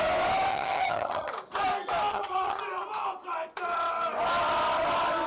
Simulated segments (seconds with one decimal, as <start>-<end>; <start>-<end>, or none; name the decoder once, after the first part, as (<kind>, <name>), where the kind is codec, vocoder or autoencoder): 0.5-1.3 (vocoder, HiFi-GAN); 2.1-2.6